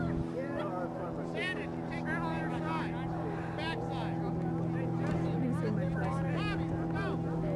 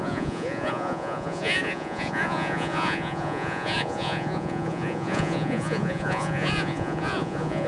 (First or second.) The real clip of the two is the first